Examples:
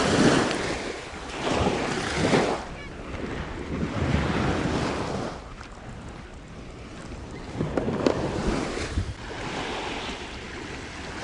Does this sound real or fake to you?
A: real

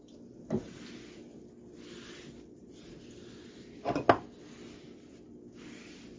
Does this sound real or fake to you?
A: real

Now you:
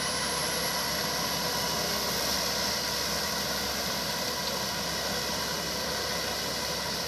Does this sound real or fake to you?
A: real